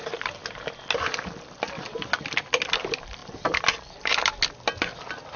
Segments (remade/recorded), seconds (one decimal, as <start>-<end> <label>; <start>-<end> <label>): 0.0-5.4 recorded

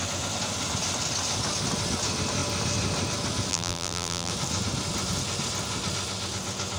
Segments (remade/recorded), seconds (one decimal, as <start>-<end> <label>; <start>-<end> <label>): 0.0-3.5 recorded; 3.5-4.3 remade; 4.3-6.8 recorded

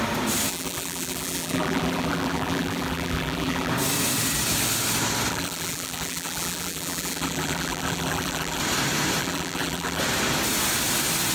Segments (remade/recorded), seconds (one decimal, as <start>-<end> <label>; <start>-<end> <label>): 0.0-0.5 recorded; 0.5-3.7 remade; 3.7-5.3 recorded; 5.3-8.6 remade; 8.6-9.2 recorded; 9.2-10.0 remade; 10.0-11.3 recorded

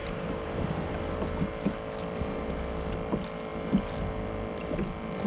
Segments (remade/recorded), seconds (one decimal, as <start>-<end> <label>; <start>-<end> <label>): 0.0-0.9 remade; 0.9-5.3 recorded

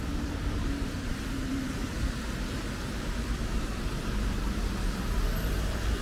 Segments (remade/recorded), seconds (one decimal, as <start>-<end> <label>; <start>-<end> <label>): 0.0-1.8 remade; 1.8-5.4 recorded; 5.4-6.0 remade